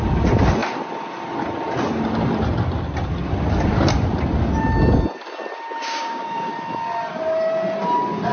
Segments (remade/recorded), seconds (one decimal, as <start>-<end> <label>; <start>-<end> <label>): 0.0-5.8 recorded; 5.8-6.5 remade; 6.5-8.3 recorded